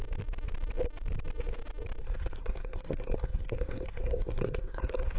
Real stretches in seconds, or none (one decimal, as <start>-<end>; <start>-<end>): 0.0-2.0